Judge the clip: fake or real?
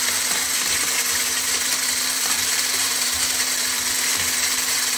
fake